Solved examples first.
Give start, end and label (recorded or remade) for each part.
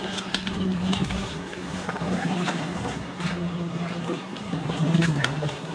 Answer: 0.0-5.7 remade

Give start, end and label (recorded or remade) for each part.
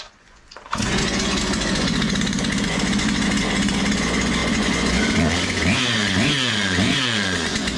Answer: 0.0-7.8 remade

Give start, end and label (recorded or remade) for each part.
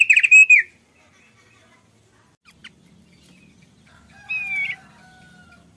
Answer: 0.0-5.8 recorded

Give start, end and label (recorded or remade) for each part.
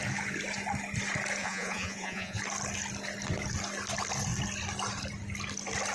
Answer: 0.0-1.4 recorded; 1.4-2.4 remade; 2.4-5.9 recorded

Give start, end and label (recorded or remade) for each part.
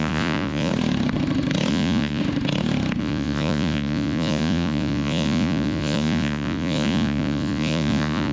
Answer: 0.0-0.7 remade; 0.7-1.7 recorded; 1.7-2.2 remade; 2.2-3.0 recorded; 3.0-8.3 remade